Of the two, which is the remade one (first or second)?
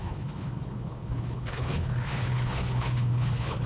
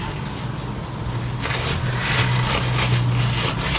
first